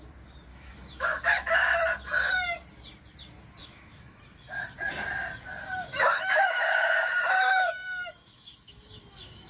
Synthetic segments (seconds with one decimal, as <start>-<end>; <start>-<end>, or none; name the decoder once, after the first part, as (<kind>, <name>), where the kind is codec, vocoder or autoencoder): 0.5-1.8 (autoencoder, DAC-VAE); 3.6-4.6; 5.9-9.5